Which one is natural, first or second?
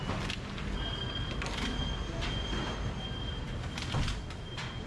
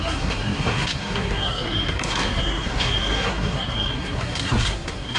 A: first